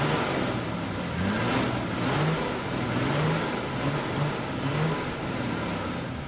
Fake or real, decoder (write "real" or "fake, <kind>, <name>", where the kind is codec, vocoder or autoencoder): real